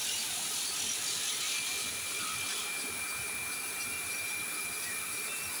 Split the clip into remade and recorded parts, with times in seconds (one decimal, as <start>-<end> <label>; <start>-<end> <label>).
0.0-5.6 recorded